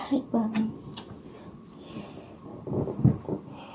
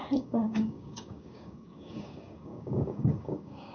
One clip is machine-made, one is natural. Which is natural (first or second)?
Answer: first